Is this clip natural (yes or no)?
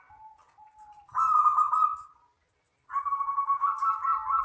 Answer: yes